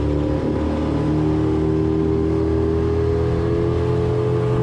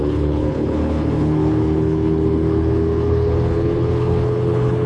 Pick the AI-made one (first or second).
second